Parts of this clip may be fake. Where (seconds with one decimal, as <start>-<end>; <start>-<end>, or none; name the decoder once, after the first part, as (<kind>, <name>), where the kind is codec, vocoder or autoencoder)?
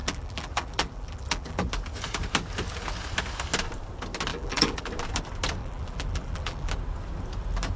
0.0-1.7 (vocoder, BigVGAN v2); 4.3-4.8; 5.6-6.7